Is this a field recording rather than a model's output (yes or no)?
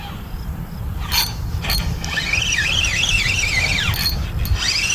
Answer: yes